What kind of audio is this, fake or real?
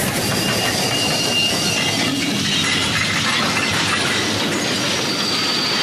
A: real